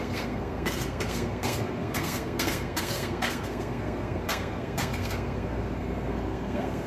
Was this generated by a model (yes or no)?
yes